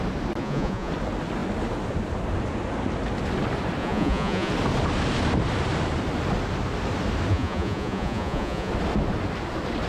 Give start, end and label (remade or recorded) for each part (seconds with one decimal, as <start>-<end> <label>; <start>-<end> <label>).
0.0-0.4 recorded; 0.4-0.9 remade; 0.9-3.8 recorded; 3.8-4.5 remade; 4.5-7.3 recorded; 7.3-8.7 remade; 8.7-9.9 recorded